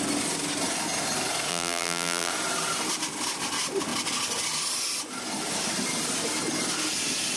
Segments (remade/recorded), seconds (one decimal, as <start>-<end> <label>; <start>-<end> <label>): 0.0-1.5 recorded; 1.5-2.3 remade; 2.3-7.4 recorded